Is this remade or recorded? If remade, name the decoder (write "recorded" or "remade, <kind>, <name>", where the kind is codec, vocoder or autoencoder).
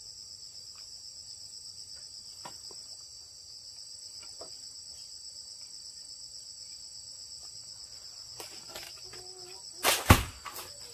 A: recorded